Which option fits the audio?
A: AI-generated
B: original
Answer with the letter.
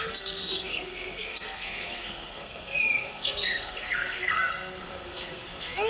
A